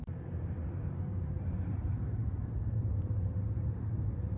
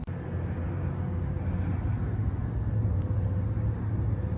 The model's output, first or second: first